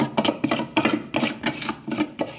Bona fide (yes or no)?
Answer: yes